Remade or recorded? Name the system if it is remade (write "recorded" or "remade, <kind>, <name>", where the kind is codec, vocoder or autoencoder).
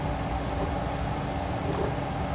recorded